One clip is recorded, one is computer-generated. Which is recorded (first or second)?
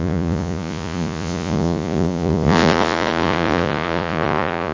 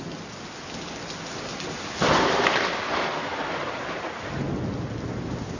second